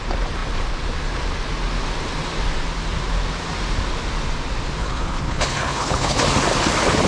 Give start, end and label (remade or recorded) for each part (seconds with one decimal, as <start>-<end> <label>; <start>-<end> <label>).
0.0-4.8 recorded; 4.8-6.2 remade; 6.2-7.1 recorded